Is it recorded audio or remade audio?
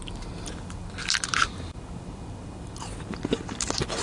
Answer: recorded